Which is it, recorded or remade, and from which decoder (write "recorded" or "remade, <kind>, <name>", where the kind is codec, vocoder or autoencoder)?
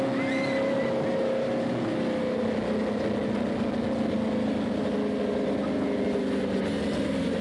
recorded